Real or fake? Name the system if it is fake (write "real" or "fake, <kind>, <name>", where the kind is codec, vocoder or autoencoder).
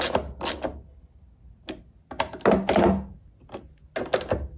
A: real